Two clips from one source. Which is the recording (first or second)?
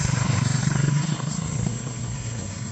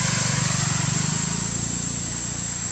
second